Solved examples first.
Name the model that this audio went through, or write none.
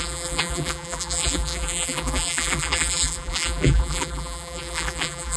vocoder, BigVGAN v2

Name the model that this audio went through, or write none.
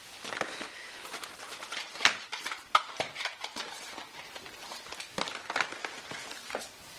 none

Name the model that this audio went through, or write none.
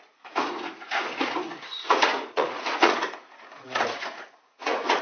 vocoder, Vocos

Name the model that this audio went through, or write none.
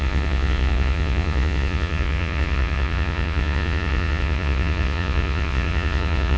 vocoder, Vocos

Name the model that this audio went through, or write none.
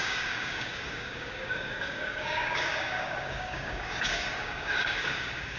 codec, DAC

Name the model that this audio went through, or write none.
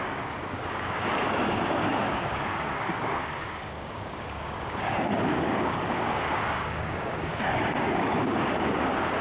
codec, DAC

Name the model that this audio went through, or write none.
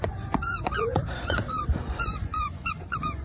vocoder, Vocos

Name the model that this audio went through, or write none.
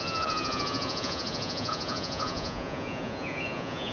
vocoder, Vocos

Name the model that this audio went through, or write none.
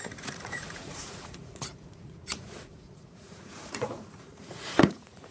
vocoder, Vocos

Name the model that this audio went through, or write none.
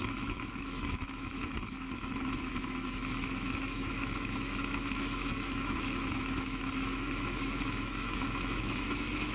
autoencoder, DAC-VAE